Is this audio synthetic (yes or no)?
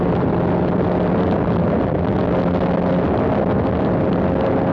no